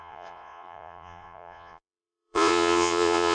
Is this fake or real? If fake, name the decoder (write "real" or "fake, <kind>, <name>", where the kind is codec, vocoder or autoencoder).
fake, vocoder, Vocos